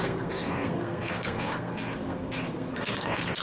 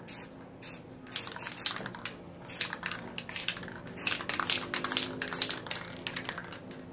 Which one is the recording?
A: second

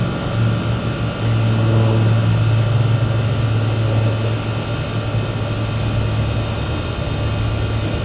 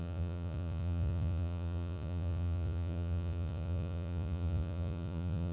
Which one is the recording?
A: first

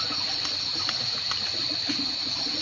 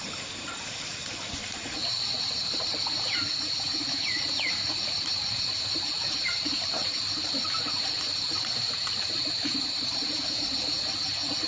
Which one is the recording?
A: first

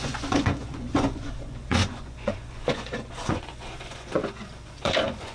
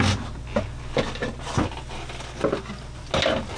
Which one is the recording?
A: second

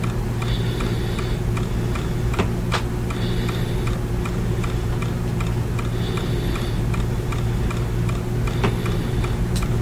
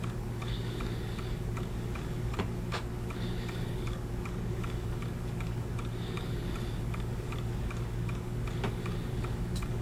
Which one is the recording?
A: first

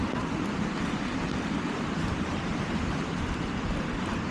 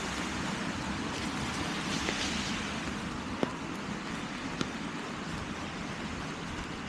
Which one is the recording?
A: second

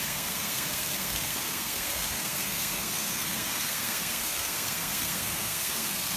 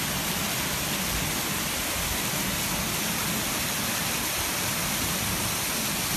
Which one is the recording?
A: second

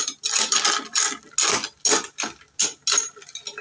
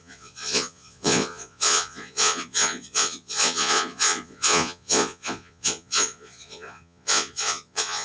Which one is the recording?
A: first